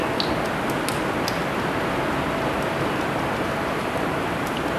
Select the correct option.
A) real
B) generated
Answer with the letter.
A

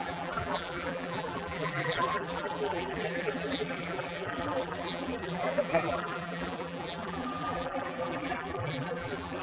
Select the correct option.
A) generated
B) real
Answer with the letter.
A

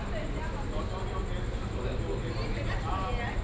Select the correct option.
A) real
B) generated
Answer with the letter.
A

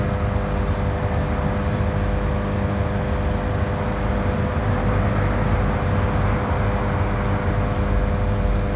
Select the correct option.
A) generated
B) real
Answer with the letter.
B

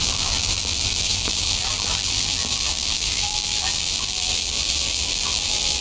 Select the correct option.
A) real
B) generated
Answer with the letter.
B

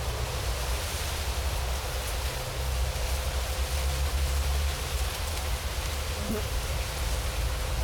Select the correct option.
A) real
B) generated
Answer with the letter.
A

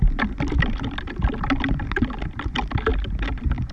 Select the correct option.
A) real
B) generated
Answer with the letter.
A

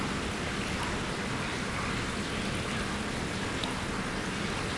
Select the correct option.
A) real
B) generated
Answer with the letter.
A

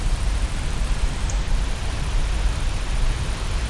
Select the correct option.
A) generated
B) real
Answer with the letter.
A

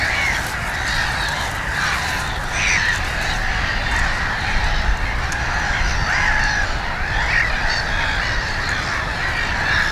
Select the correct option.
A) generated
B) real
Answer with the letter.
B